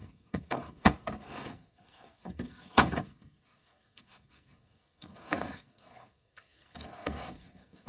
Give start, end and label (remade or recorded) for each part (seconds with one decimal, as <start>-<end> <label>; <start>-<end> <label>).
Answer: 0.0-7.9 remade